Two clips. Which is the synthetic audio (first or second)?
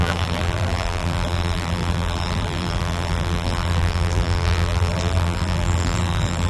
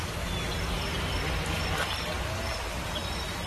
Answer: first